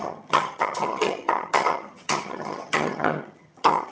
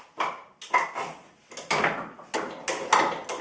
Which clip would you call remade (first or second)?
first